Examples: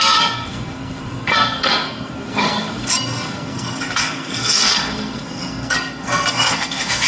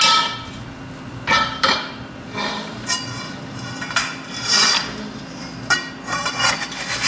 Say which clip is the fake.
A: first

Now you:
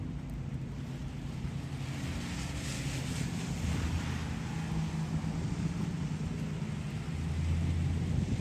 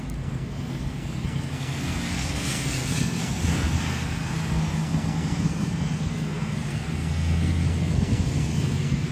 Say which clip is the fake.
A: second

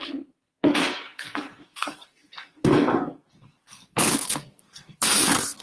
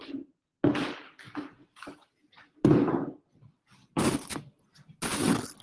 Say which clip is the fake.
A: first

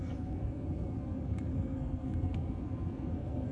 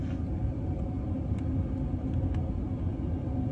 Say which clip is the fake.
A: first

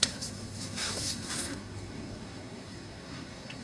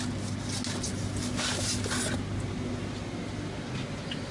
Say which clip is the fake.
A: first